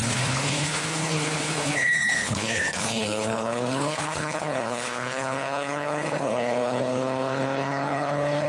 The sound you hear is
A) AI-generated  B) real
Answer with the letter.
A